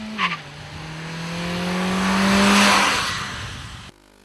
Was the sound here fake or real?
real